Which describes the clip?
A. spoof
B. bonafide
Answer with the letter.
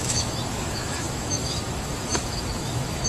A